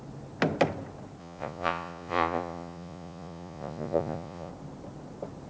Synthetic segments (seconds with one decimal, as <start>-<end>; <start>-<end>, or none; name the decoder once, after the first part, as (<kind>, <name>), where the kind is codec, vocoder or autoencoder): 1.2-4.5 (vocoder, Vocos)